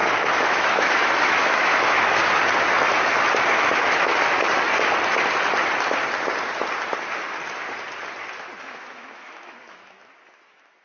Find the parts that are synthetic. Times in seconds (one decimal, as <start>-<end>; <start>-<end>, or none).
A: 0.0-2.2; 3.5-4.1; 8.6-10.8

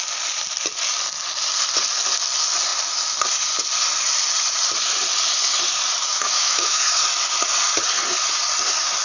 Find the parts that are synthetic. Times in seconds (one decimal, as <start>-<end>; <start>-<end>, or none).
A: 6.0-6.8